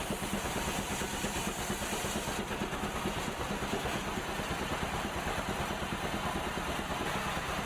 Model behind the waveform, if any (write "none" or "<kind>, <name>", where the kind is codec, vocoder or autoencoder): none